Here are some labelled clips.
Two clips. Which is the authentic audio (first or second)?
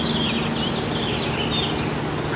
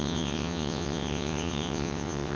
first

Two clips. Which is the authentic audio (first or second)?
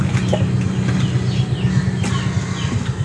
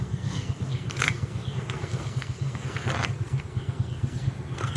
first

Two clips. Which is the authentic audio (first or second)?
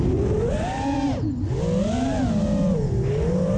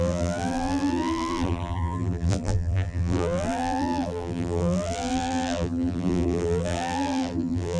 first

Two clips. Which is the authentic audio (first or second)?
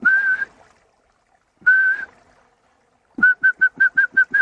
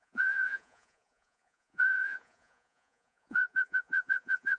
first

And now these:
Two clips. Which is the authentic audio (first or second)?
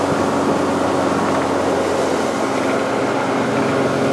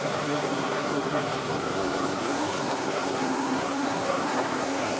first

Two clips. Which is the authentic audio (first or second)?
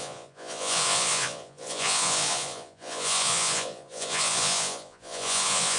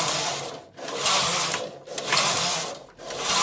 second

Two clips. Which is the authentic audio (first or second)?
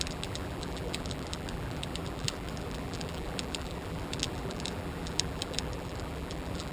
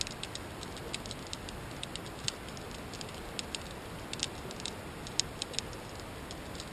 second